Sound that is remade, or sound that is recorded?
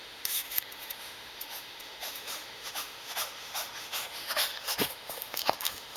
remade